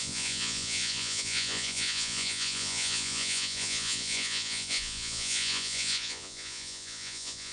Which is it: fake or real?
fake